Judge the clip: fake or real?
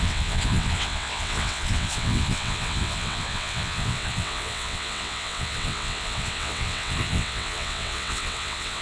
fake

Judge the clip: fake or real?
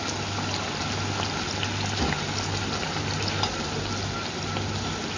real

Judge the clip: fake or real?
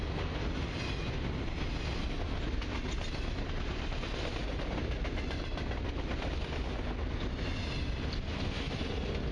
real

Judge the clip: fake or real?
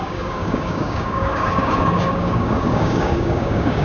fake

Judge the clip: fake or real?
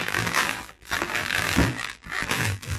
fake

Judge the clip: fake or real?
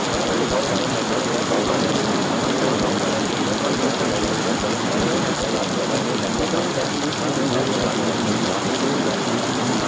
real